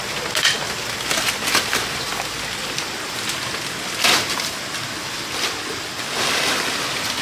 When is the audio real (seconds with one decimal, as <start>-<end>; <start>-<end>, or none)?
0.0-7.2